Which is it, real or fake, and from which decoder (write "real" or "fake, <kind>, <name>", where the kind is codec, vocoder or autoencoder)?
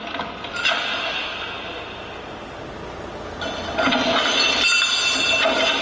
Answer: real